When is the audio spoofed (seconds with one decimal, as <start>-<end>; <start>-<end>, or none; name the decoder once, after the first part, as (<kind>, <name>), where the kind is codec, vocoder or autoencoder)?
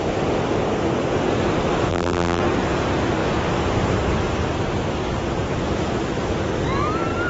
1.9-2.4 (vocoder, BigVGAN v2)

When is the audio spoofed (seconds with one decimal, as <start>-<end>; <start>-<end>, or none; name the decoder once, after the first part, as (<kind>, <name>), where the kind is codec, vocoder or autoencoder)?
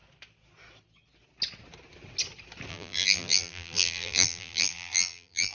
2.7-5.5 (vocoder, BigVGAN v2)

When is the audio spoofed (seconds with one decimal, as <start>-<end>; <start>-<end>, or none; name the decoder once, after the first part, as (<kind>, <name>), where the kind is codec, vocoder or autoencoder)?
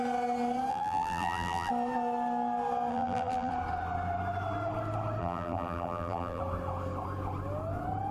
0.7-1.7 (vocoder, BigVGAN v2); 2.9-3.5; 5.2-6.4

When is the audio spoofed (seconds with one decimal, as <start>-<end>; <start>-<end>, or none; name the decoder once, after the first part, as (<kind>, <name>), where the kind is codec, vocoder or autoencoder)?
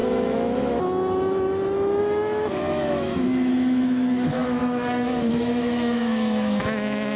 0.0-7.2 (autoencoder, DAC-VAE)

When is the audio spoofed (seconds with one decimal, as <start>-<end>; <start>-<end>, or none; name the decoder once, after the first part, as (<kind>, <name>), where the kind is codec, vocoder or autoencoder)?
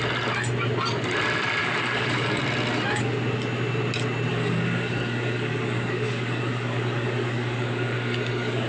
1.6-2.4 (codec, DAC); 4.3-8.7